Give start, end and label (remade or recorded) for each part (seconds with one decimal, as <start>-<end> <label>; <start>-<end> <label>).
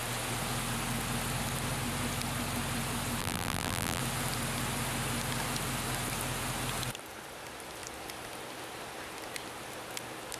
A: 0.0-3.2 recorded; 3.2-4.0 remade; 4.0-10.4 recorded